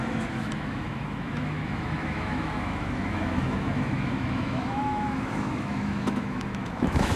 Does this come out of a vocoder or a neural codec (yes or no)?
yes